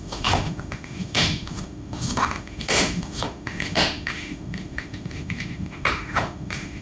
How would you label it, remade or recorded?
remade